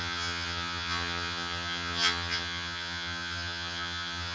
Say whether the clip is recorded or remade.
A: remade